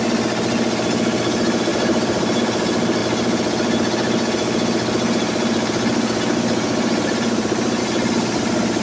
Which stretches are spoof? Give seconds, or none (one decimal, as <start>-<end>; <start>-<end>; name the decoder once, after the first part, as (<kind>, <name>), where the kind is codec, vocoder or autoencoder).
1.7-2.4 (vocoder, BigVGAN v2)